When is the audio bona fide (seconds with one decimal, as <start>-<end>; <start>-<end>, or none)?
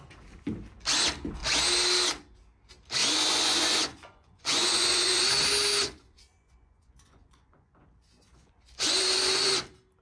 0.0-3.0; 5.2-5.8; 9.5-10.0